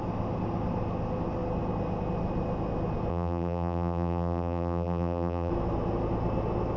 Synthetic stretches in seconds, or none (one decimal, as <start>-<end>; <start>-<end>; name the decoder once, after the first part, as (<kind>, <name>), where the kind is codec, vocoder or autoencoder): 3.1-5.5 (vocoder, BigVGAN v2)